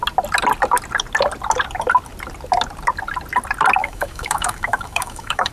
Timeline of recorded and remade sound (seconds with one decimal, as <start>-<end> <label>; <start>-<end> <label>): 0.0-3.8 recorded; 3.8-5.5 remade